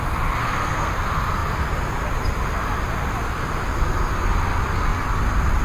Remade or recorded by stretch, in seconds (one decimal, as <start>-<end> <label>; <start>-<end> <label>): 0.0-0.4 recorded; 0.4-0.9 remade; 0.9-5.6 recorded